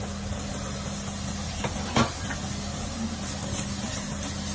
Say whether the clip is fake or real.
real